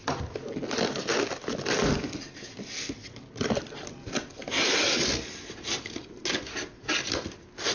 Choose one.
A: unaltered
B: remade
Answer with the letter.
A